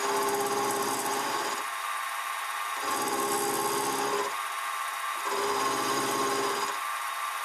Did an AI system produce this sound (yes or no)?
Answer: no